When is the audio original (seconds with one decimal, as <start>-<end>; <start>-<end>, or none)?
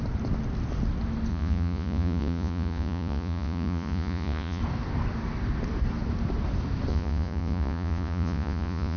0.0-1.3; 4.6-6.9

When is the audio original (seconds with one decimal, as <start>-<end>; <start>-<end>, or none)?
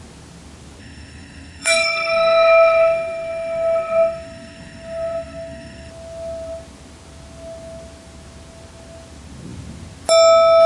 0.0-0.8; 5.9-10.7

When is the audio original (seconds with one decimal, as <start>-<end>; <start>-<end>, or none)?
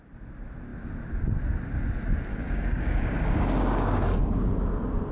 0.0-2.3; 4.2-5.1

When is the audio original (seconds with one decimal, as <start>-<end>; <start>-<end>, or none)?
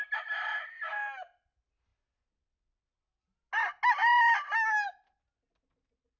0.0-6.2